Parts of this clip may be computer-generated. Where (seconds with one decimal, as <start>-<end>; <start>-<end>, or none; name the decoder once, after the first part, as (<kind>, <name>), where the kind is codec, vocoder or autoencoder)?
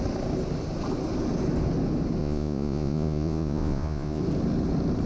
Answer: 2.2-4.2 (vocoder, Vocos)